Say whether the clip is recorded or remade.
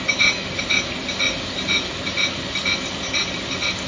recorded